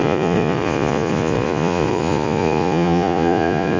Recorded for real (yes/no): no